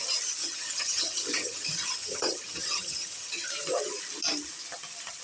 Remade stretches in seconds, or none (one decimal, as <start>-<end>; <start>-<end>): 0.4-3.5